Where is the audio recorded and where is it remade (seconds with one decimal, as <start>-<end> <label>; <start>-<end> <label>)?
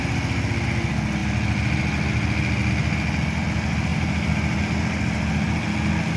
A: 0.0-3.9 recorded; 3.9-4.6 remade; 4.6-6.2 recorded